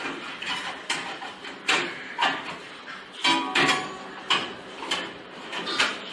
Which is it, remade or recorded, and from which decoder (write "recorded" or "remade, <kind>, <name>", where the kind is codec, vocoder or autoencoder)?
recorded